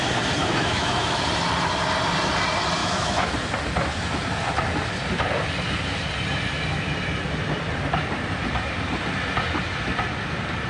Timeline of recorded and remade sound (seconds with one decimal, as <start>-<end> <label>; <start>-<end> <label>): 0.0-0.4 recorded; 0.4-1.2 remade; 1.2-2.8 recorded; 2.8-3.3 remade; 3.3-10.7 recorded